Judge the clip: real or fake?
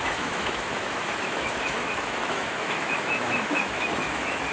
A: fake